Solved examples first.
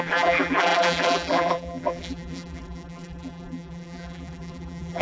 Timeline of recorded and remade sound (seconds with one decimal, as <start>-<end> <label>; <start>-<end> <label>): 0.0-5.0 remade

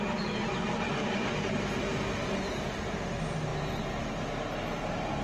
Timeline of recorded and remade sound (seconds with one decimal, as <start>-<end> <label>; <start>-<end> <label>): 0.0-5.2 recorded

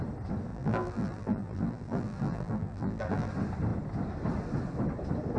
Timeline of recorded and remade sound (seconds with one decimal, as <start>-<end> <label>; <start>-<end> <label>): 0.0-0.5 recorded; 0.5-3.3 remade; 3.3-5.4 recorded